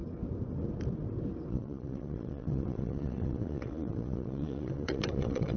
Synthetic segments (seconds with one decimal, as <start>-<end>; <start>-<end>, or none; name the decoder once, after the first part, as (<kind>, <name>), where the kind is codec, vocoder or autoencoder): 1.5-5.6 (vocoder, WaveNeXt)